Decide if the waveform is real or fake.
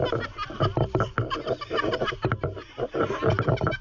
real